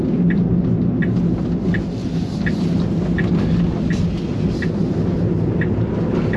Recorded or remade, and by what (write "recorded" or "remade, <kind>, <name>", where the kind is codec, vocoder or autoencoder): recorded